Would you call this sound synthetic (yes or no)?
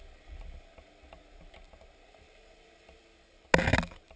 no